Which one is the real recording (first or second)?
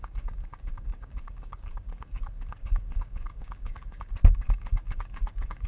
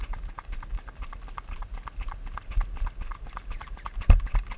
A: second